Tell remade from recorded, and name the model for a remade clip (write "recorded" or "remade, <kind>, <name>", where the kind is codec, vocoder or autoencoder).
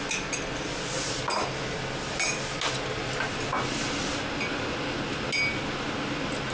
recorded